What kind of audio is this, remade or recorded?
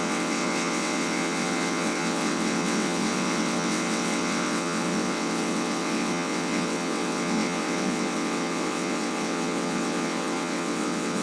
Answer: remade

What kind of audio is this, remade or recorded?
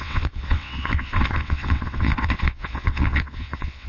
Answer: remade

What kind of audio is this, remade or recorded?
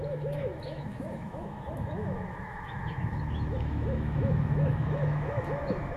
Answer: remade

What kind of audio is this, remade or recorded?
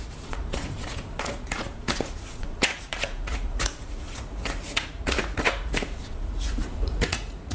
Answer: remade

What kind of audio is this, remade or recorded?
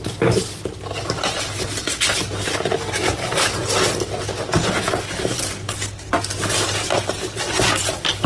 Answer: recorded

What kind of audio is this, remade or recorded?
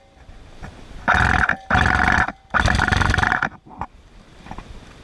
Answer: recorded